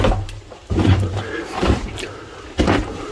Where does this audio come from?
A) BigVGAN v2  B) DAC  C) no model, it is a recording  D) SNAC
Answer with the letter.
A